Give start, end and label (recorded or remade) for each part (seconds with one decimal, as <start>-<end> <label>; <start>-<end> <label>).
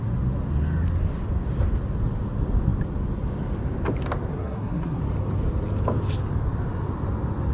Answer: 0.0-4.3 recorded; 4.3-5.0 remade; 5.0-7.5 recorded